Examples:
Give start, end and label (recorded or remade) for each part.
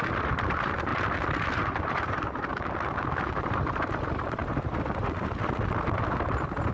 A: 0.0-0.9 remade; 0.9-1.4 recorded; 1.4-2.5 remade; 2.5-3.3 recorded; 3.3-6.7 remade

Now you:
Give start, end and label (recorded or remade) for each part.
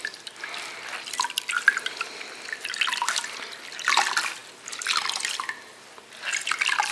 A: 0.0-6.9 recorded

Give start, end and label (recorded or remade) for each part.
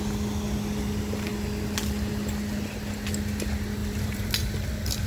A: 0.0-3.8 recorded; 3.8-4.3 remade; 4.3-5.1 recorded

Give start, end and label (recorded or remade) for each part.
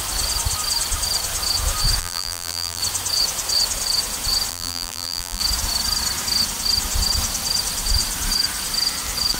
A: 0.0-2.0 recorded; 2.0-2.8 remade; 2.8-4.5 recorded; 4.5-5.4 remade; 5.4-9.4 recorded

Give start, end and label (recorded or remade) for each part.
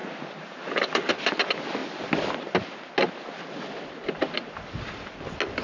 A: 0.0-1.1 remade; 1.1-5.6 recorded